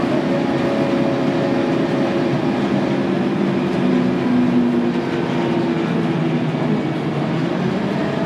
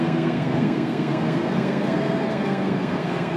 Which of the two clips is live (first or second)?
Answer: first